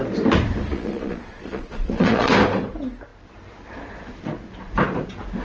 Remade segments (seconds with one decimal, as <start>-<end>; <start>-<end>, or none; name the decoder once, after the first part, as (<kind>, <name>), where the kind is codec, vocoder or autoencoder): 0.7-2.3 (vocoder, Vocos)